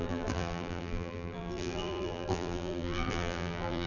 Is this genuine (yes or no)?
no